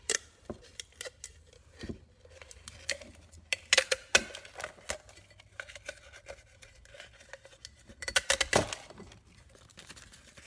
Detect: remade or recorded recorded